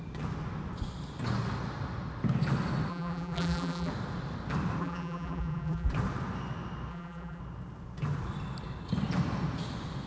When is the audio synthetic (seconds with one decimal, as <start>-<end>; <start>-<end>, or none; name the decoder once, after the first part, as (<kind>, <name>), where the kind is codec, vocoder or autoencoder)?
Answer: 2.9-3.9 (vocoder, BigVGAN v2); 4.8-5.9; 6.9-7.4

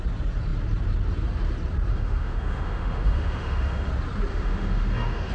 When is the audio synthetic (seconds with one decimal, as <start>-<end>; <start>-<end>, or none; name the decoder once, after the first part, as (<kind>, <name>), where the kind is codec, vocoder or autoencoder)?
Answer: 1.9-3.9 (autoencoder, DAC-VAE); 4.3-5.3

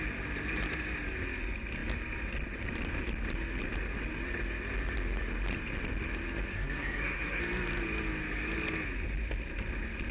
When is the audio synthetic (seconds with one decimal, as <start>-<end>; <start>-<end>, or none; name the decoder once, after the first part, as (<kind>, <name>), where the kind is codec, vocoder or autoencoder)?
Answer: 6.5-7.4 (codec, SNAC)

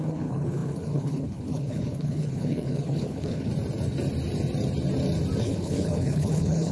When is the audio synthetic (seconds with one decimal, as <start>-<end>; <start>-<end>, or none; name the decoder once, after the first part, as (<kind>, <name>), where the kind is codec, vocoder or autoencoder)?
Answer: 0.0-3.5 (codec, HILCodec); 5.4-6.7

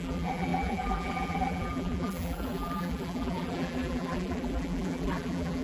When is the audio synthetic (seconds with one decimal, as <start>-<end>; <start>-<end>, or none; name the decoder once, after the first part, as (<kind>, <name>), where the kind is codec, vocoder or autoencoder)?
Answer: 0.0-5.6 (vocoder, BigVGAN v2)

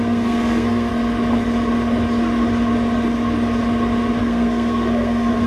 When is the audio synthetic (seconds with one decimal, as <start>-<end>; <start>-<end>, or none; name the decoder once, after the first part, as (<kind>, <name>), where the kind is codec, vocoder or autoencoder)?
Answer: 0.0-0.9 (codec, SNAC); 4.2-5.5

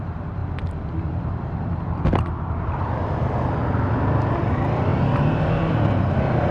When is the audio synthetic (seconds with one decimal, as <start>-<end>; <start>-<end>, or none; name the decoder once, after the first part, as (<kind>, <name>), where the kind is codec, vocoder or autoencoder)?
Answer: none